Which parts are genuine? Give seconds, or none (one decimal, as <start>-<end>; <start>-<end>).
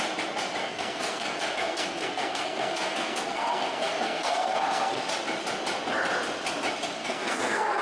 0.0-0.6; 5.0-7.0